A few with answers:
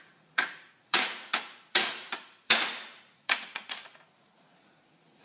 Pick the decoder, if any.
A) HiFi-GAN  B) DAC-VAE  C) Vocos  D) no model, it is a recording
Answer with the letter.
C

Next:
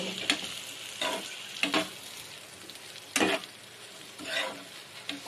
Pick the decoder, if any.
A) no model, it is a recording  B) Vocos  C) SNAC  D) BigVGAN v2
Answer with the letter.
A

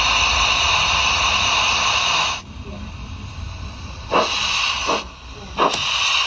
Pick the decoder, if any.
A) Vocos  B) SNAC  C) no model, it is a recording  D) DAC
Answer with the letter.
C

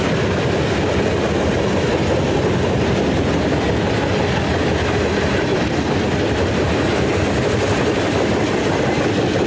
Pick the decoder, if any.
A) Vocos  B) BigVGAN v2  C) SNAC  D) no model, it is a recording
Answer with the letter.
B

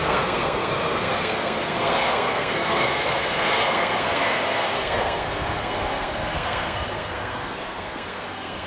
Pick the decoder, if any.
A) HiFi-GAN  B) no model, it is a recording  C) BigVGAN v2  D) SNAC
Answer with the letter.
D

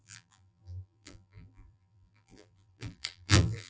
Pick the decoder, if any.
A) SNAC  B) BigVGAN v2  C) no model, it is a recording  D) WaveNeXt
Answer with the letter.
B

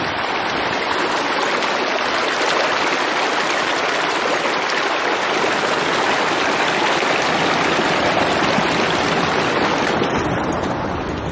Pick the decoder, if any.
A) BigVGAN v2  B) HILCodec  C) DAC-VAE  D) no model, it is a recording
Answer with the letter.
D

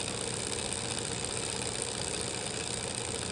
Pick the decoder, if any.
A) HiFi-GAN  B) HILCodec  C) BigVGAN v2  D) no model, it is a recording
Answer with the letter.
D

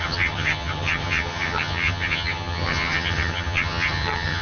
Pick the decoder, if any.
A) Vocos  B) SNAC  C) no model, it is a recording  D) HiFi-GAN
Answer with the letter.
D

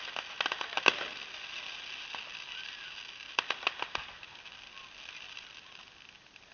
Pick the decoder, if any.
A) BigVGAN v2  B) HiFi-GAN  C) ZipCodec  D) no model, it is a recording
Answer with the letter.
D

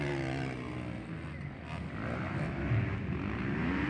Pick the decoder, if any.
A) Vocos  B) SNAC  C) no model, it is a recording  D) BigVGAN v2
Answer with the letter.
C